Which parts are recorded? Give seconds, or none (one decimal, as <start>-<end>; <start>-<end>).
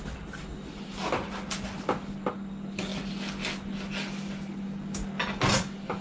0.0-6.0